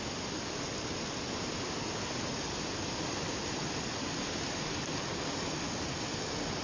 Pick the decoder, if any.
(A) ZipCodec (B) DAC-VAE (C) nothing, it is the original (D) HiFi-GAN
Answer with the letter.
C